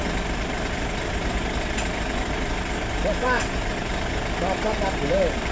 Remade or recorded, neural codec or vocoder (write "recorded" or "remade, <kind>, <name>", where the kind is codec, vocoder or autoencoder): recorded